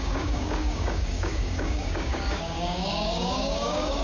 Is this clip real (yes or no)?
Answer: no